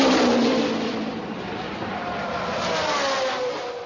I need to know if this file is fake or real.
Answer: real